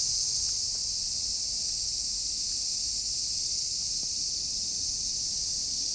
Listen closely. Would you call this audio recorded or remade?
recorded